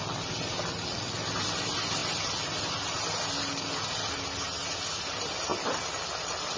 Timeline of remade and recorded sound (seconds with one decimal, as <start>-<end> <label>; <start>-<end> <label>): 0.0-6.6 recorded